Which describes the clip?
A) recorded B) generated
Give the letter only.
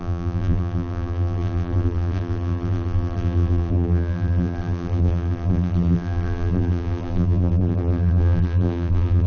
B